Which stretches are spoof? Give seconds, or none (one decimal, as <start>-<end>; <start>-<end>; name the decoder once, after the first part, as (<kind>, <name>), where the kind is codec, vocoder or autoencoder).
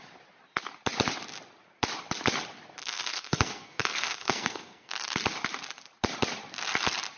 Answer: 2.8-4.9 (codec, SNAC)